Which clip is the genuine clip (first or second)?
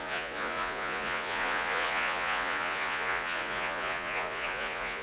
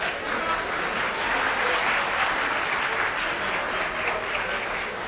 second